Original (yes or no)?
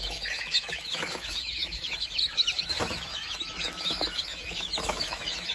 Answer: no